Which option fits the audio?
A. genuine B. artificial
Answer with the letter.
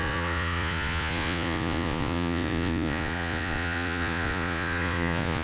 B